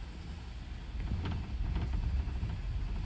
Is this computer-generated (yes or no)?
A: no